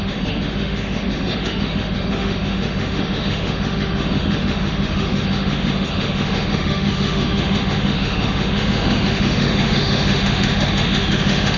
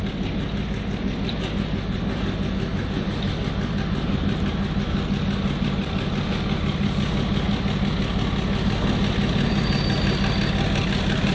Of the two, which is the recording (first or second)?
second